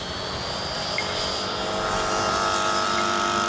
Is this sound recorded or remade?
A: recorded